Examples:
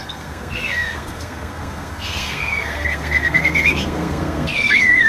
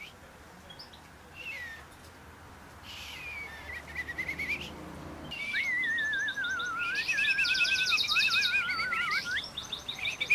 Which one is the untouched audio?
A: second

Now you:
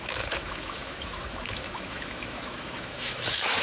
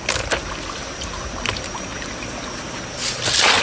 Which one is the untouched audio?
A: second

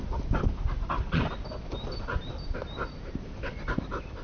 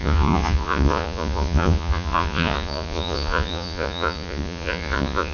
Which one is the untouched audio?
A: first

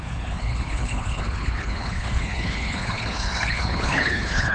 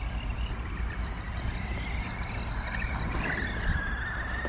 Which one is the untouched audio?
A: second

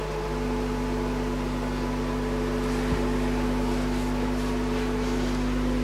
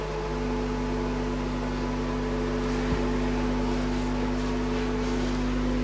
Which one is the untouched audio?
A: second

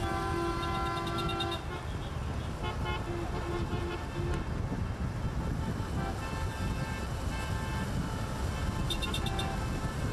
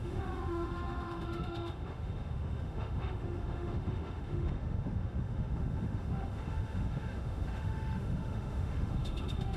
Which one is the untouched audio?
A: first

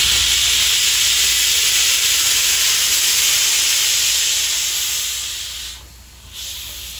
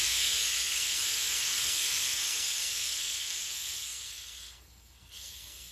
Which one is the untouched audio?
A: first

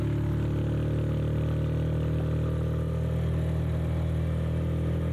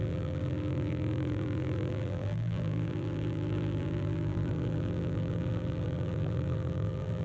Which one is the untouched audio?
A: first